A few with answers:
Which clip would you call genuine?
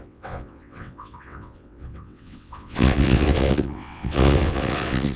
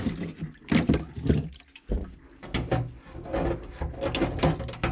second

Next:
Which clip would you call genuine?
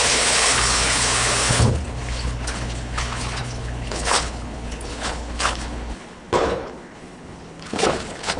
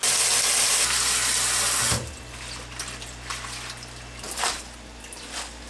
second